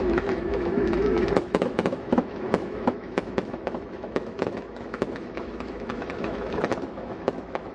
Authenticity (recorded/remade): remade